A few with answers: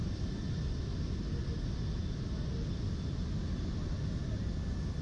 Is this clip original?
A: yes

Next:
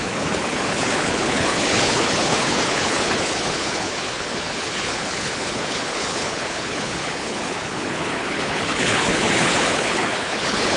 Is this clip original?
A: no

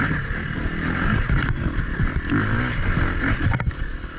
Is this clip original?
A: yes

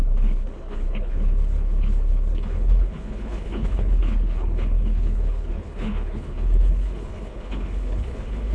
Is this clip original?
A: no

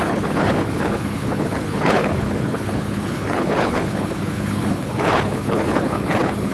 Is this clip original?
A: no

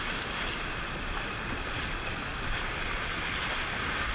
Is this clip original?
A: yes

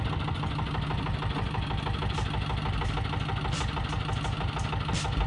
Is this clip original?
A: yes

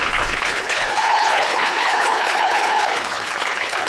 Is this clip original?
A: no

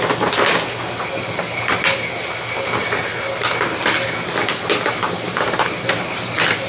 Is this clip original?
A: yes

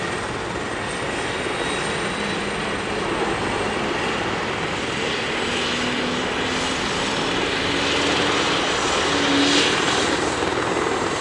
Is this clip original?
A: yes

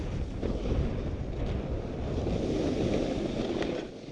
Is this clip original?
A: yes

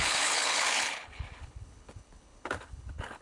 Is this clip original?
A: no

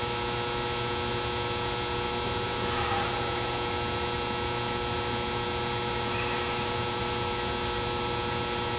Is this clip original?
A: yes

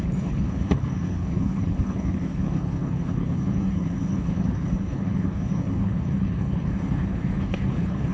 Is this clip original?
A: no